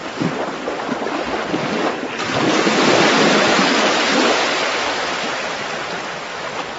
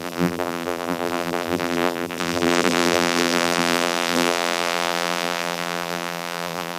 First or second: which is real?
first